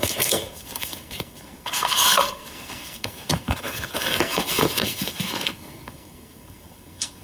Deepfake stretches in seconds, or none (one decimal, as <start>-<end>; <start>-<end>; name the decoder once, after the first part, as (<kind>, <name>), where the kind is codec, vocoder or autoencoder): 0.0-7.2 (codec, SNAC)

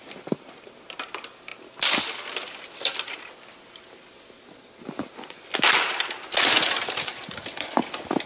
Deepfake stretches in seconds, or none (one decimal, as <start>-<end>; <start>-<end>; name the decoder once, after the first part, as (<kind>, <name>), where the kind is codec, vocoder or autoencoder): none

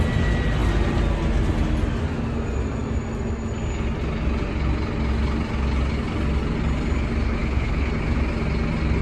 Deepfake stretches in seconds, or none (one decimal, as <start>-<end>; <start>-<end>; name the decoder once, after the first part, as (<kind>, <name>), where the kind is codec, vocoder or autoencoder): 7.4-7.9 (codec, HILCodec)

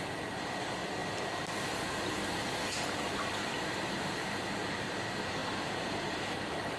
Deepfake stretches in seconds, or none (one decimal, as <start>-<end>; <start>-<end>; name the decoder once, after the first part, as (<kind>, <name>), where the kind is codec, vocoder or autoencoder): 0.0-6.8 (vocoder, BigVGAN v2)